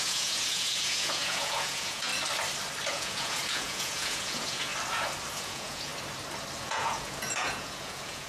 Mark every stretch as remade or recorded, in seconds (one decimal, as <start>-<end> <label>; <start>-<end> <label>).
0.0-2.1 remade; 2.1-2.9 recorded; 2.9-4.7 remade; 4.7-5.3 recorded; 5.3-5.9 remade; 5.9-6.6 recorded; 6.6-8.3 remade